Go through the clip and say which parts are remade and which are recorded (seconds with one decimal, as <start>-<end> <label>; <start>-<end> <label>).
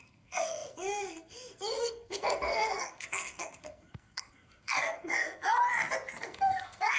0.0-5.6 remade; 5.6-6.2 recorded; 6.2-7.0 remade